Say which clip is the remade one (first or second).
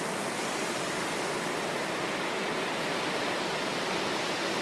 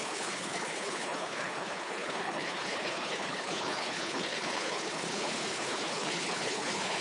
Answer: second